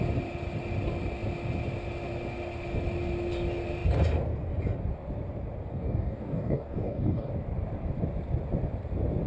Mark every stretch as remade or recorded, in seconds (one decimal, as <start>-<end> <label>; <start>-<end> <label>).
0.0-5.7 recorded; 5.7-7.3 remade; 7.3-9.3 recorded